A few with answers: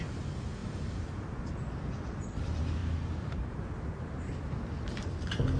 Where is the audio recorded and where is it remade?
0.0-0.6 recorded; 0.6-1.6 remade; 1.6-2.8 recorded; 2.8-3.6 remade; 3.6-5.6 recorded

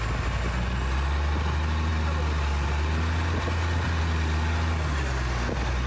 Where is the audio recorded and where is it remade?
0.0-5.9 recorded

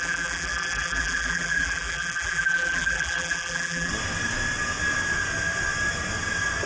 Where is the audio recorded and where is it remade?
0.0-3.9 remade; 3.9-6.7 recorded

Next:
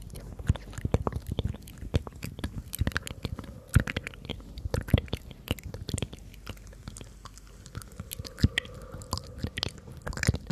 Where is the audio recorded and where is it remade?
0.0-4.3 recorded; 4.3-6.3 remade; 6.3-10.5 recorded

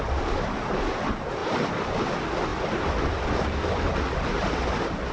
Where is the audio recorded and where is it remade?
0.0-1.4 recorded; 1.4-2.1 remade; 2.1-2.5 recorded; 2.5-3.8 remade; 3.8-5.1 recorded